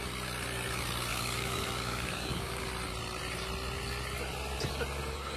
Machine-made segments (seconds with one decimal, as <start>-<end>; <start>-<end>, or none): 1.1-2.7